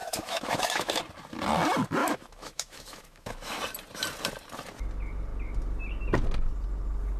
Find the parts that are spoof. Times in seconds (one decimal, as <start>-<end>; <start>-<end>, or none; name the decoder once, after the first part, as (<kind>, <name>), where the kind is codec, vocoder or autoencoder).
0.0-1.0 (autoencoder, DAC-VAE); 2.0-3.6